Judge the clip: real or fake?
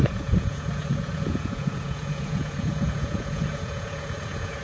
fake